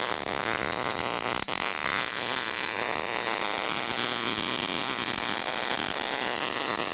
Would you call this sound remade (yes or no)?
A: no